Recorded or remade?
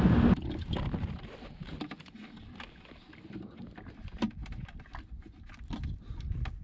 recorded